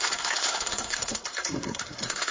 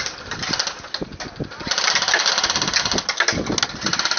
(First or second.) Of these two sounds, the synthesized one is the first